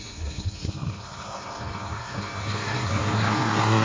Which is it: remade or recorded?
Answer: remade